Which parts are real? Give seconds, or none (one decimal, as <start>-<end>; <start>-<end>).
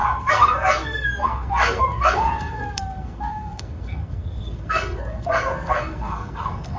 none